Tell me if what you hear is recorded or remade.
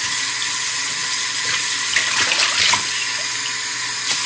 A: recorded